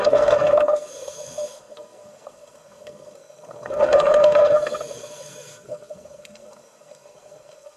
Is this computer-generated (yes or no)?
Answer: yes